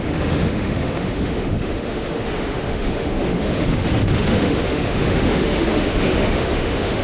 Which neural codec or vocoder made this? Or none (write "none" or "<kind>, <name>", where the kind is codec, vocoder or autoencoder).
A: autoencoder, DAC-VAE